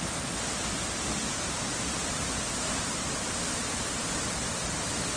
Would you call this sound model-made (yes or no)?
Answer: no